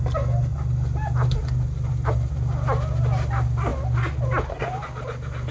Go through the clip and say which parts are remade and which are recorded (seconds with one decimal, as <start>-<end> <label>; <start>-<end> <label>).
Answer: 0.0-5.5 recorded